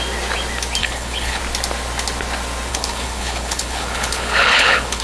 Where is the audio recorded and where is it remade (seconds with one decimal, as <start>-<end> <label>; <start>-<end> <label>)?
0.0-0.8 recorded; 0.8-1.4 remade; 1.4-2.7 recorded; 2.7-5.0 remade